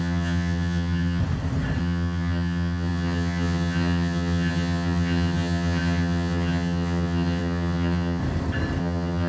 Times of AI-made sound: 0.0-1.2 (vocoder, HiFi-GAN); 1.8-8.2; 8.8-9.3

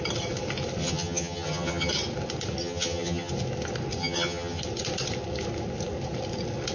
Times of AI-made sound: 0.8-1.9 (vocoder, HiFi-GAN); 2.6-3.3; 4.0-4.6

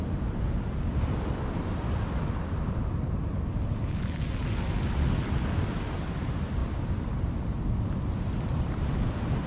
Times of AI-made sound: none

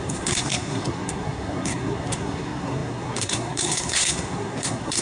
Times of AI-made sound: 0.0-5.0 (codec, SNAC)